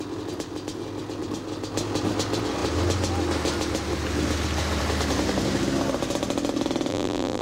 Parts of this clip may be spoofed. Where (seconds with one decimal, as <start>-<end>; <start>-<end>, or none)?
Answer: 6.9-7.4